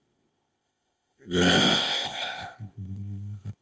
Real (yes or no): no